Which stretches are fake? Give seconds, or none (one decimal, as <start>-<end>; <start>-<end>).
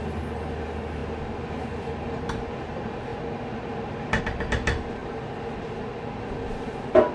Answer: none